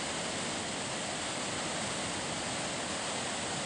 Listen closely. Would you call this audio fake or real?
real